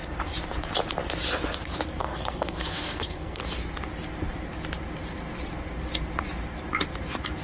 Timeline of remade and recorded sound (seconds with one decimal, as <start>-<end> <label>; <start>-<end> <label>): 0.0-2.0 recorded; 2.0-3.4 remade; 3.4-7.4 recorded